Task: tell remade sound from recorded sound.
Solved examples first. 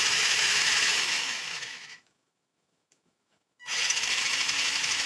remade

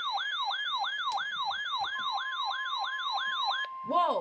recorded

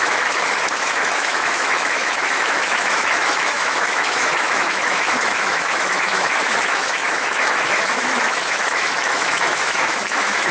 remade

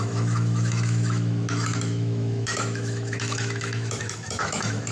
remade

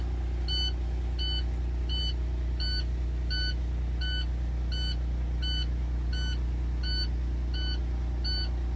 recorded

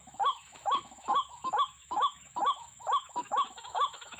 remade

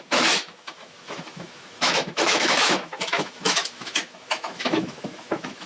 remade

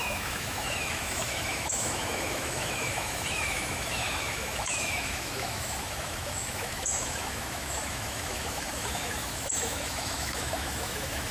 remade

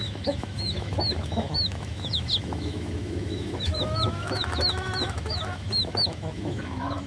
remade